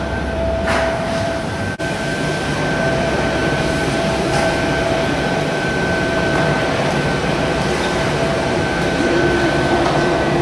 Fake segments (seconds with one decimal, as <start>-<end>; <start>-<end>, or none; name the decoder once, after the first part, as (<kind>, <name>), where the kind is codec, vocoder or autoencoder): 0.0-10.4 (vocoder, BigVGAN v2)